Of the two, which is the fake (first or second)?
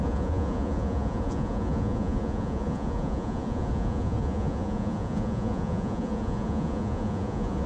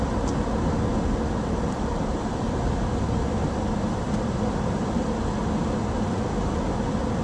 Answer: first